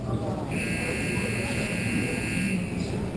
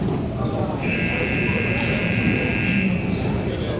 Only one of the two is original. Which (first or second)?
first